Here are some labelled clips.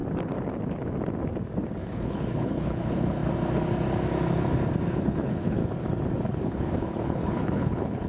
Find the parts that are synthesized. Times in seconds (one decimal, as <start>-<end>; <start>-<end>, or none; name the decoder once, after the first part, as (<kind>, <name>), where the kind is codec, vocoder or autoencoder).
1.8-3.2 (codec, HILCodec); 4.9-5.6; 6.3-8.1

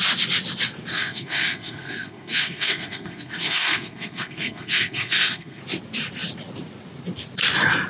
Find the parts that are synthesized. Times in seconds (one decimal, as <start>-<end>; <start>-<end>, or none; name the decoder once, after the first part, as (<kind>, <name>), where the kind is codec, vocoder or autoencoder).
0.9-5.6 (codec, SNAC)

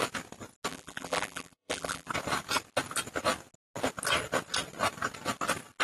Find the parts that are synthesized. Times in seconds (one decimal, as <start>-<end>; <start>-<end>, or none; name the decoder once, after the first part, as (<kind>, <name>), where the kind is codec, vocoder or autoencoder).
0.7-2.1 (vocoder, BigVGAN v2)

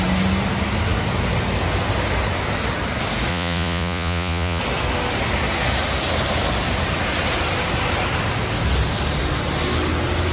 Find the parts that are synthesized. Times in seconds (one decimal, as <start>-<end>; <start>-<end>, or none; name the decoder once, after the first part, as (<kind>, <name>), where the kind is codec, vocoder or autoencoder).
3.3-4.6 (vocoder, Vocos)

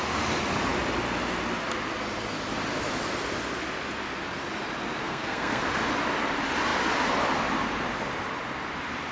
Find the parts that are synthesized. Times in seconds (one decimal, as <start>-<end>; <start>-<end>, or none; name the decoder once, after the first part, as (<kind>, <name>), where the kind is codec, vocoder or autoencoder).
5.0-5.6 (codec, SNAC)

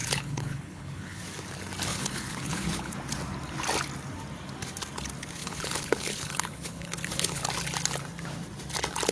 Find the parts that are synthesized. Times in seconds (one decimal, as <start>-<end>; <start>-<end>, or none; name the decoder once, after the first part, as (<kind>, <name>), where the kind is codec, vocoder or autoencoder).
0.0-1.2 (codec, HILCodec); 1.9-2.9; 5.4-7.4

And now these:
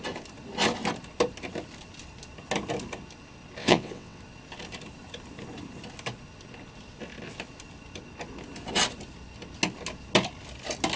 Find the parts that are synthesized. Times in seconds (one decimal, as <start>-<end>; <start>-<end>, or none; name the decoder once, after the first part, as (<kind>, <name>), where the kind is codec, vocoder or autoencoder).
3.6-4.2 (vocoder, WaveNeXt)

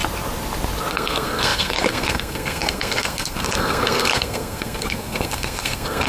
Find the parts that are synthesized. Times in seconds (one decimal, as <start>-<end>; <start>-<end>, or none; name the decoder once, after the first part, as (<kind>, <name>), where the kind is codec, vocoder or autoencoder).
0.9-6.1 (codec, SNAC)